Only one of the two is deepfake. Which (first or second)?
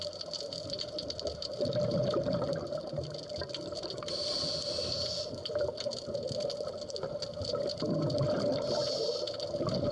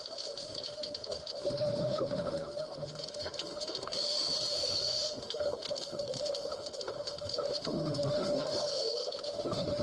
second